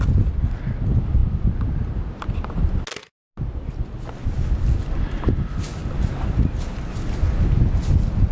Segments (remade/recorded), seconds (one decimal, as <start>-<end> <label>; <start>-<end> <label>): 0.0-8.3 recorded